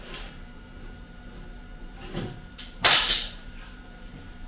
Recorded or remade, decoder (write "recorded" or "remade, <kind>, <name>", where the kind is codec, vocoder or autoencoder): remade, vocoder, BigVGAN v2